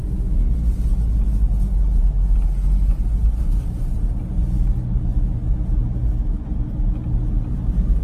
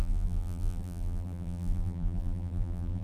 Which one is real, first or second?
first